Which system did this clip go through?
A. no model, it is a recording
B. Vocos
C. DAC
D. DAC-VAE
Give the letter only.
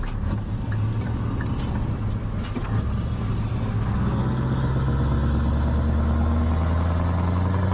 A